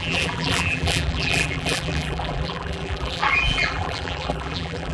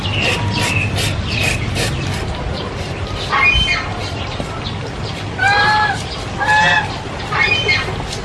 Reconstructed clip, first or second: first